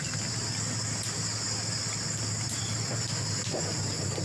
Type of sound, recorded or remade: recorded